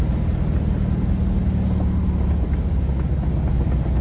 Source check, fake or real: real